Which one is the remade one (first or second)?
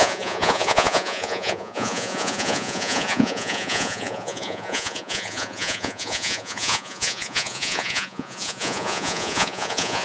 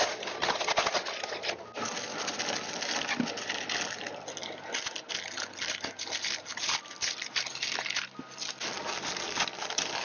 first